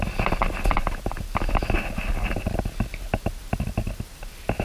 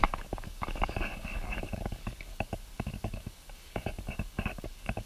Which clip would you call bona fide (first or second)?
first